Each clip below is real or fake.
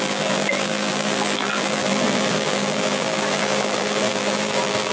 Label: fake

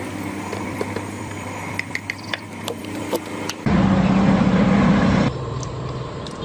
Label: fake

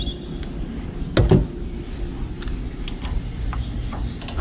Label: real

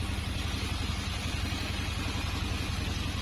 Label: real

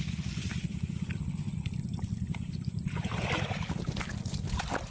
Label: real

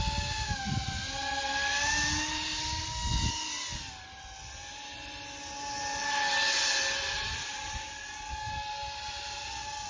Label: real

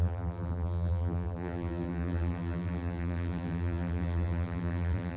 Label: fake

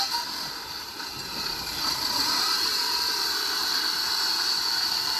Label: fake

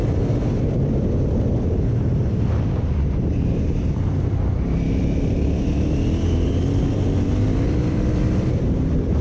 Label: fake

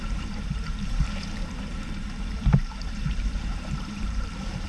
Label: fake